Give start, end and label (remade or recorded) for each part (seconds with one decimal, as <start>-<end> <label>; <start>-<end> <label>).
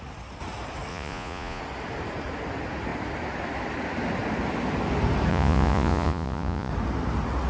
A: 0.0-0.9 recorded; 0.9-1.6 remade; 1.6-5.3 recorded; 5.3-6.7 remade; 6.7-7.5 recorded